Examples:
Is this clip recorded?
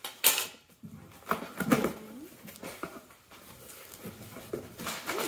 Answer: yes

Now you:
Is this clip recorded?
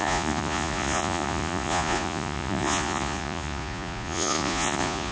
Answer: no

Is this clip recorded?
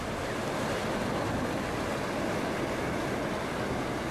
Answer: yes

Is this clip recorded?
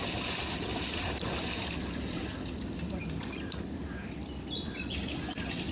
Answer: yes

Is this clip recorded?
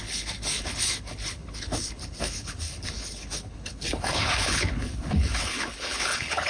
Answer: no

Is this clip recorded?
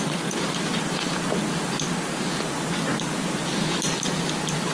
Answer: yes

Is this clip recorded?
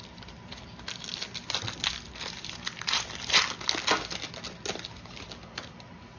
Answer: yes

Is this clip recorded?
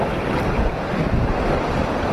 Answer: yes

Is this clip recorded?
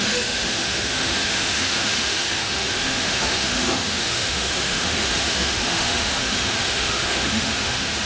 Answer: no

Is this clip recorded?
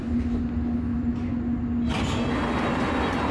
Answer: yes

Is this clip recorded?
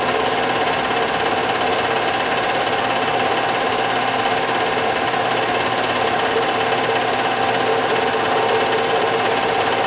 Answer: yes